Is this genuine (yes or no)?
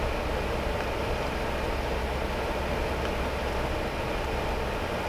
yes